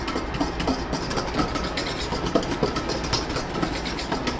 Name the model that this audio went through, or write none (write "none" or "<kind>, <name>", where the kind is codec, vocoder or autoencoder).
none